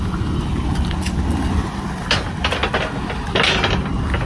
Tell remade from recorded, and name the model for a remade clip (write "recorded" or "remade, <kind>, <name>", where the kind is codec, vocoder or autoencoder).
recorded